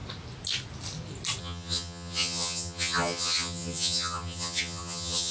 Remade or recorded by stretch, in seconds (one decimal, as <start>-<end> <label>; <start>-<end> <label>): 0.0-1.4 recorded; 1.4-5.3 remade